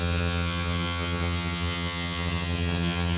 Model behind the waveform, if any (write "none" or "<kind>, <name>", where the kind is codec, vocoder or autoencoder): vocoder, HiFi-GAN